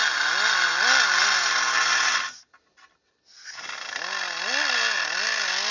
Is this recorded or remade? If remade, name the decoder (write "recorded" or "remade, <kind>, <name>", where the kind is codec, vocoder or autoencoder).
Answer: recorded